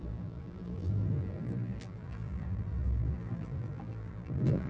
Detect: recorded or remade remade